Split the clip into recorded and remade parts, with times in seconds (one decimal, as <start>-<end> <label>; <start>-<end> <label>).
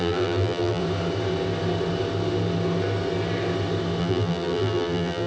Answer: 0.0-0.8 remade; 0.8-4.0 recorded; 4.0-5.3 remade